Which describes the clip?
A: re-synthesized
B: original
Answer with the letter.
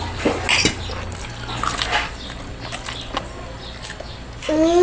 B